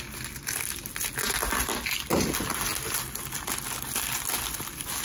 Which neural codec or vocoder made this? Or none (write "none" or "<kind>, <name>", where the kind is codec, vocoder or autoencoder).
none